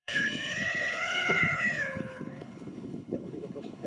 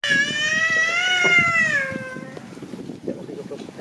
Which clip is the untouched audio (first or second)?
second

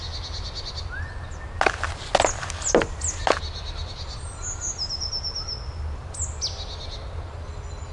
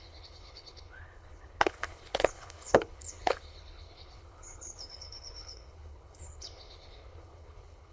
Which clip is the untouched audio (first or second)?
first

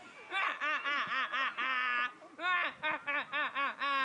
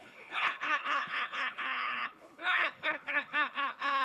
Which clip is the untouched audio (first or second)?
first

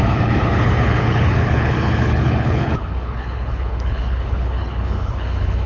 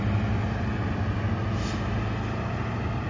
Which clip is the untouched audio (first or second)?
second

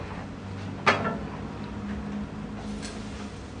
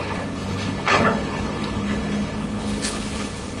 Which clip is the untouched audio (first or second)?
first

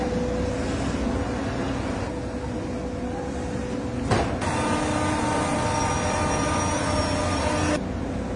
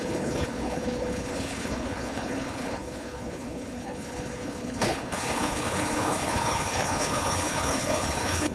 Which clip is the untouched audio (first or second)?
first